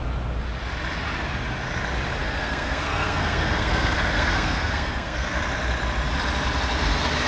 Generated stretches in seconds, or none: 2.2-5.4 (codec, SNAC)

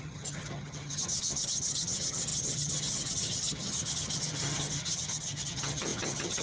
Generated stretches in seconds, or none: 0.0-6.4 (vocoder, HiFi-GAN)

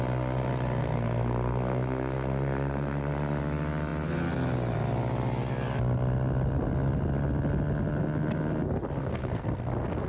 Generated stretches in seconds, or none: 0.8-3.4 (codec, SNAC); 9.0-9.7

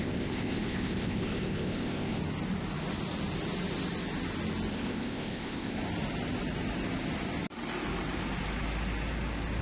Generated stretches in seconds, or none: 0.0-2.2 (codec, ZipCodec); 4.7-5.8